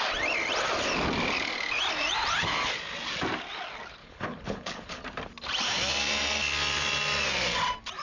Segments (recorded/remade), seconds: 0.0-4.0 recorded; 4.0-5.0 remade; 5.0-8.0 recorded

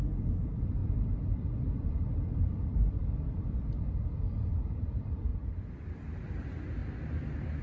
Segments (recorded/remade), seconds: 0.0-5.3 remade; 5.3-6.3 recorded; 6.3-6.8 remade; 6.8-7.6 recorded